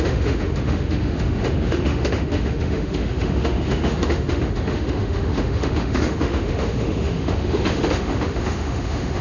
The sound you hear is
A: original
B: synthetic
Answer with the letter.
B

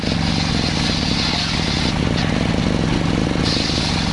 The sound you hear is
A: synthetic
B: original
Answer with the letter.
B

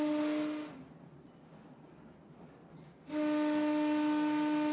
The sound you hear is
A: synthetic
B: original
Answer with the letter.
B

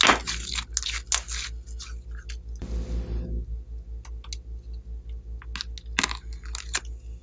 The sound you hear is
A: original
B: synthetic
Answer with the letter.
A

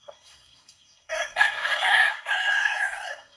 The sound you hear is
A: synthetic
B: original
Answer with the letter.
A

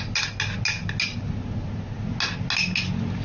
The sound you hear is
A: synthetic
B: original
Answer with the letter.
B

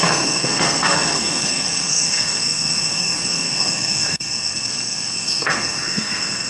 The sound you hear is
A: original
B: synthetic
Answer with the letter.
B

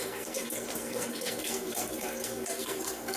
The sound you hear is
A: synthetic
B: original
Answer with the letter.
A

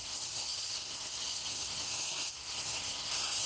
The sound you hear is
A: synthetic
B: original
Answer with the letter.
A